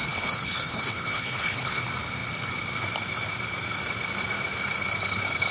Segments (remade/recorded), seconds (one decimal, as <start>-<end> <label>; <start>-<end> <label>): 0.0-1.8 remade; 1.8-5.5 recorded